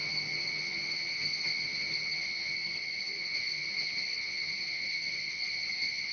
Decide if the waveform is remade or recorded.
remade